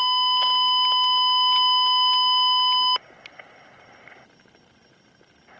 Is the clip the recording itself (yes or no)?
yes